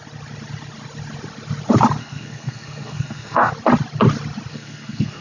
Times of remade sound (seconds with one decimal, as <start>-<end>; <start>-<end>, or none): 2.0-3.5; 4.5-5.2